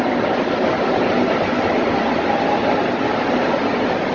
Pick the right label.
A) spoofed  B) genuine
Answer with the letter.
B